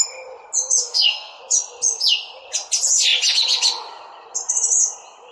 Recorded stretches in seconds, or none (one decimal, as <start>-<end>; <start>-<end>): 0.0-0.8; 1.4-5.3